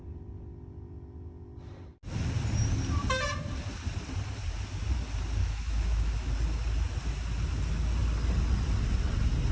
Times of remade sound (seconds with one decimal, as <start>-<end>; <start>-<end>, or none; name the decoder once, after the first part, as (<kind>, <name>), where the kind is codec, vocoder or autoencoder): 5.4-6.3 (autoencoder, DAC-VAE)